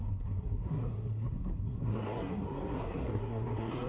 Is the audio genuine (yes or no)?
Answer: no